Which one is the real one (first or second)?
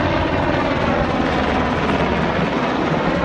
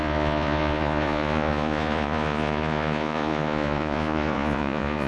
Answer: first